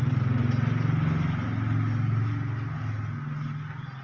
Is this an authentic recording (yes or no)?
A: yes